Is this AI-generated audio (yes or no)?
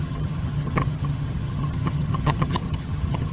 yes